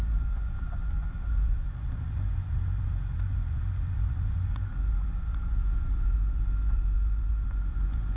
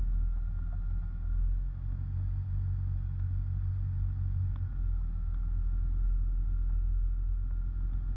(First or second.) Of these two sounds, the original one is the second